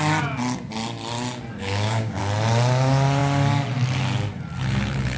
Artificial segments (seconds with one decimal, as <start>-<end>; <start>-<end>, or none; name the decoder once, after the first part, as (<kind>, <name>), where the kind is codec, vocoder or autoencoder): 1.6-2.2 (codec, DAC)